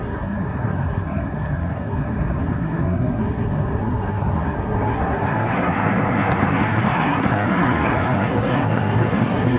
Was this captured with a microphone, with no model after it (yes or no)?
no